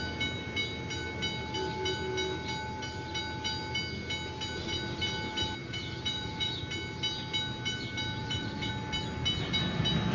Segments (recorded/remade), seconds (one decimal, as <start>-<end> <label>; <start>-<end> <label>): 0.0-5.6 recorded; 5.6-6.6 remade; 6.6-8.2 recorded; 8.2-8.7 remade; 8.7-10.1 recorded